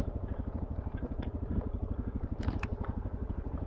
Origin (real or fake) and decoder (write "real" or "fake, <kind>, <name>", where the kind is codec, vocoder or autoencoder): fake, vocoder, BigVGAN v2